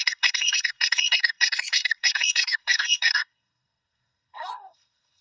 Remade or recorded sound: remade